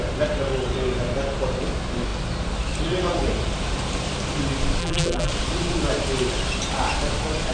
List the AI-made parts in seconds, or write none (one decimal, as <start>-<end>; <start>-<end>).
4.8-5.3